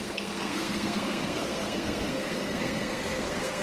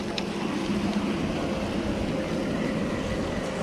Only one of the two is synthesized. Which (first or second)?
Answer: first